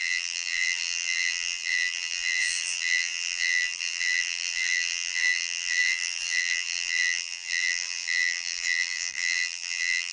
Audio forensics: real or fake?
fake